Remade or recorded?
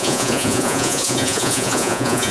remade